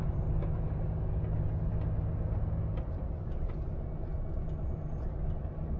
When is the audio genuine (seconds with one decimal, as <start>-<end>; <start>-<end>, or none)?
0.0-5.8